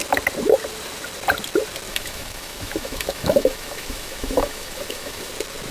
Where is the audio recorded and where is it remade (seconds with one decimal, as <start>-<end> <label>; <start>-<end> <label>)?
0.0-1.9 recorded; 1.9-5.3 remade; 5.3-5.7 recorded